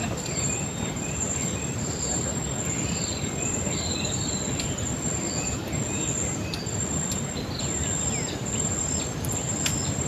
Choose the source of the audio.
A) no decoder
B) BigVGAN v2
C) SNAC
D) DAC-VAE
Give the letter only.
A